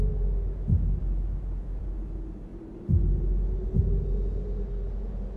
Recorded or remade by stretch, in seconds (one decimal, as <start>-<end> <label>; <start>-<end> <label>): 0.0-1.0 recorded; 1.0-1.8 remade; 1.8-5.4 recorded